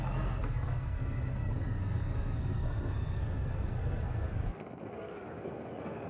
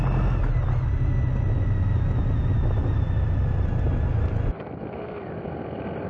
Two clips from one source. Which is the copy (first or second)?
first